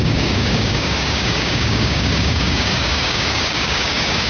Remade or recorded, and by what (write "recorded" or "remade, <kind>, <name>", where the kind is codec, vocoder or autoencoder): remade, codec, DAC